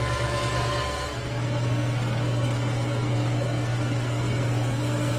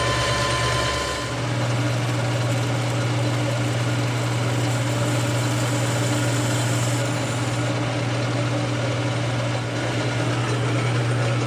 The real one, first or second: second